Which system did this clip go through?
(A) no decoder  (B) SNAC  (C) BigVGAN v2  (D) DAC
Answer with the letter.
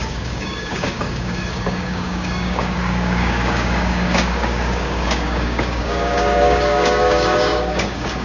D